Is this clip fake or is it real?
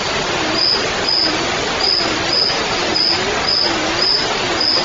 real